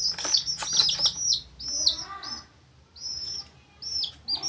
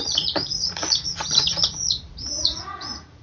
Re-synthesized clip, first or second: second